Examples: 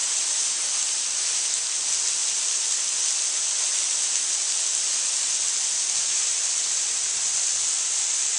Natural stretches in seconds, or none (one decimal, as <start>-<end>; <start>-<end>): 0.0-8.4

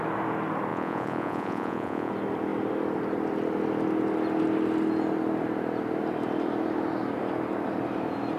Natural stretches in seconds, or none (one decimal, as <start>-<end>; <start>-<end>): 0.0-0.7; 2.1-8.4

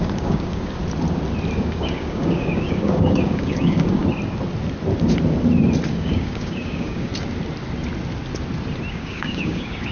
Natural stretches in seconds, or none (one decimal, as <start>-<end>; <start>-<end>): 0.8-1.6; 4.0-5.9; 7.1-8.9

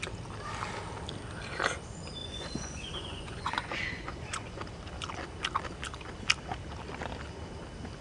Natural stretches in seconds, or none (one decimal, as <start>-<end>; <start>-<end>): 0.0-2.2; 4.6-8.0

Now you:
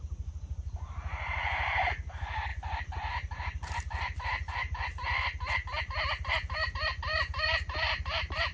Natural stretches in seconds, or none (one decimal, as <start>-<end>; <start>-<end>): 0.0-2.5; 3.1-8.5